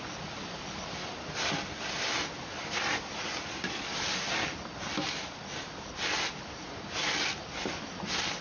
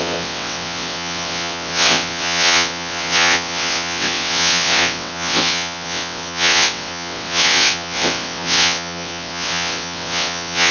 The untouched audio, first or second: first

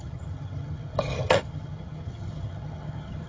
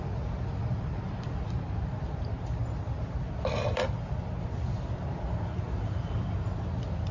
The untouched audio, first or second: second